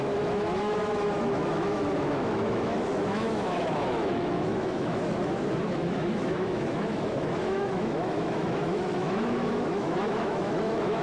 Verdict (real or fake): fake